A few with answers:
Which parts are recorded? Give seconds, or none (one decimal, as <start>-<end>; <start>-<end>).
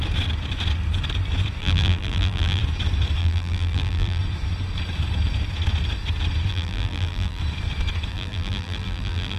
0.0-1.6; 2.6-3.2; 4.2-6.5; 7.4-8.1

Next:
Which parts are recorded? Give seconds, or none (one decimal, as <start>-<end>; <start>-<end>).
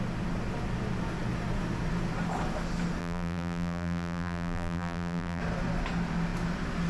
0.0-3.0; 5.4-6.9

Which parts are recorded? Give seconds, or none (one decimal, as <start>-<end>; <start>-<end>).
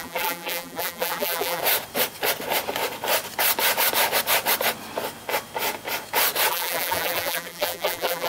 1.6-6.5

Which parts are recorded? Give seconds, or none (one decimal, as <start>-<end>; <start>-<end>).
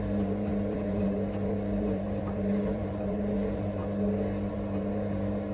3.8-4.5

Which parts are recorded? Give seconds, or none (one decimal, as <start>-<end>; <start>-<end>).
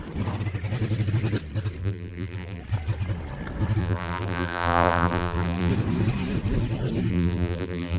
0.0-1.8; 2.6-3.8; 5.7-7.1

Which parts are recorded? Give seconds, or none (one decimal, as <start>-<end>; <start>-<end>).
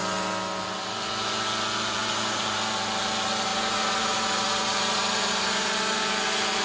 0.0-2.0; 2.6-3.5; 6.1-6.6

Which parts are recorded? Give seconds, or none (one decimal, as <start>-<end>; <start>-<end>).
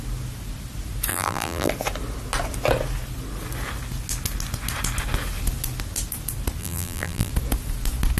0.0-1.1; 1.7-6.6; 7.3-8.2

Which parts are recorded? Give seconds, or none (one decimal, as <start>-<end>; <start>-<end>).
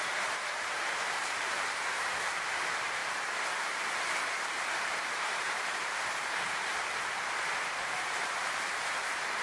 3.0-3.6